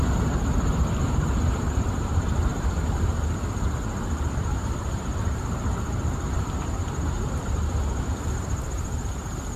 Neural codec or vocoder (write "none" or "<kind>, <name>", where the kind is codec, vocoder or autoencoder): vocoder, BigVGAN v2